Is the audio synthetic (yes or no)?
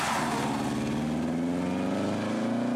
no